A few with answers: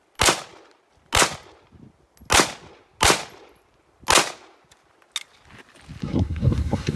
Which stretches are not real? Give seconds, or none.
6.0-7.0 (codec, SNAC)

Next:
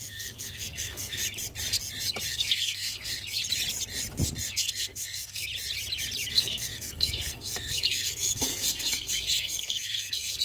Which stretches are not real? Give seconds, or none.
0.0-1.2 (codec, SNAC); 2.3-3.4; 4.5-5.5; 6.3-10.4

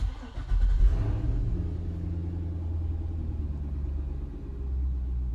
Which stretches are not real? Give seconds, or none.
none

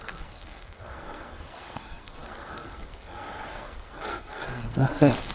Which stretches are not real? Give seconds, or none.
0.0-5.3 (codec, SNAC)

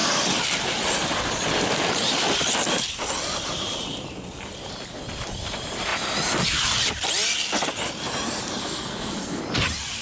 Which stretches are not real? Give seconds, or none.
8.6-9.4 (codec, SNAC)

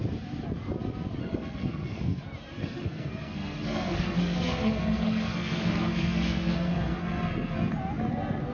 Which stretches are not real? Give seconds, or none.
1.2-2.2 (codec, SNAC); 2.6-7.7

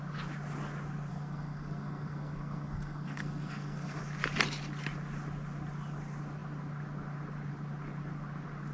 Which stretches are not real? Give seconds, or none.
1.1-4.0 (codec, SNAC)